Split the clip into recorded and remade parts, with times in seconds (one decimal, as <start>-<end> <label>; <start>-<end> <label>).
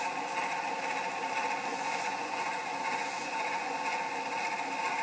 0.0-1.7 recorded; 1.7-4.0 remade; 4.0-5.0 recorded